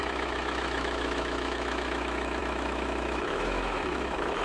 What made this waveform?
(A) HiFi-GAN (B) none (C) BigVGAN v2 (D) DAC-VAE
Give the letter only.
D